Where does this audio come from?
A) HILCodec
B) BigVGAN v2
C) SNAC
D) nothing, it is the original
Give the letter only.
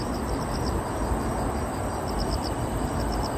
D